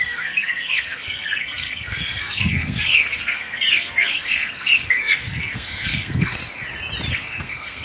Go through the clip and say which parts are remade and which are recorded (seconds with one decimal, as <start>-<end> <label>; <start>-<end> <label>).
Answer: 0.0-6.4 remade; 6.4-7.1 recorded; 7.1-7.8 remade